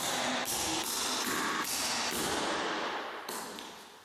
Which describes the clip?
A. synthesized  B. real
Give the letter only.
A